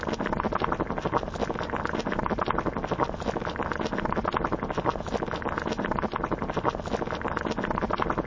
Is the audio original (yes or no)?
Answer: yes